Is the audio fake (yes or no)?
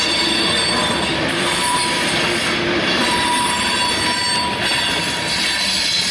yes